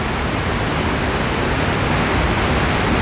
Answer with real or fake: real